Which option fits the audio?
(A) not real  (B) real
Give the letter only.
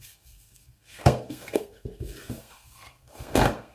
A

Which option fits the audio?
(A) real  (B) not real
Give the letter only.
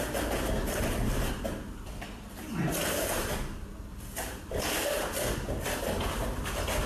A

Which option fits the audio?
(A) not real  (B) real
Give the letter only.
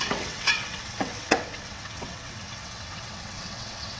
A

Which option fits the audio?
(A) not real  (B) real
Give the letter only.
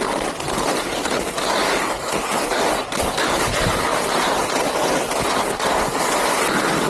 B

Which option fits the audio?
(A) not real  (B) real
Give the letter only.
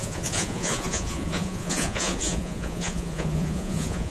A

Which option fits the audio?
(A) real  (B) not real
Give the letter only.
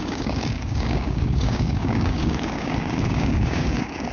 B